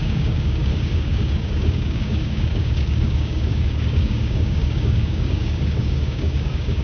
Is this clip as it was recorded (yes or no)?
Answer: no